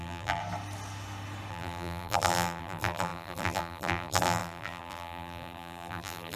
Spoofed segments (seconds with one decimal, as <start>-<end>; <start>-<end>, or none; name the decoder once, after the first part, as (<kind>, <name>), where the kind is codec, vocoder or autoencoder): 0.0-0.4 (vocoder, BigVGAN v2); 1.5-6.4